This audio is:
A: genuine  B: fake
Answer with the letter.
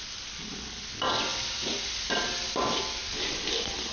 A